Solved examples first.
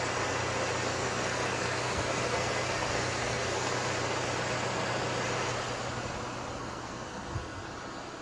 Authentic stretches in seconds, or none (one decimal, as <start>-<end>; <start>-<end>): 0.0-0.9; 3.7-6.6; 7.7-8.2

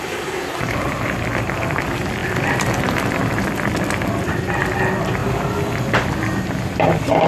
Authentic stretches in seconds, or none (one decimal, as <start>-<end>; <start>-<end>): 0.0-7.3

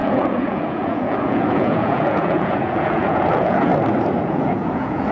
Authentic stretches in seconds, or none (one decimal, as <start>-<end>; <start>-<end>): 3.7-4.2